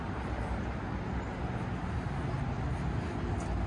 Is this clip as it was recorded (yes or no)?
yes